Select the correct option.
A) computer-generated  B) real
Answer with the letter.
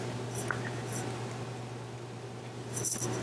B